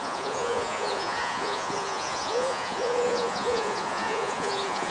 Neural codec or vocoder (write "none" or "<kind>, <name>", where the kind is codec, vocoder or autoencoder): vocoder, Vocos